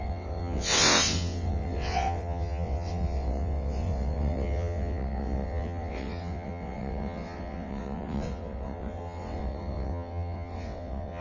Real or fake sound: fake